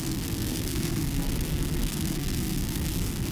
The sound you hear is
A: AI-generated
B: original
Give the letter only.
A